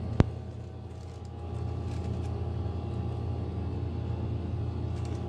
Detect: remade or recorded recorded